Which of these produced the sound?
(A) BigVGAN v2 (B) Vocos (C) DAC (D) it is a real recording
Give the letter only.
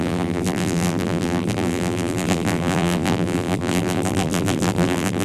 A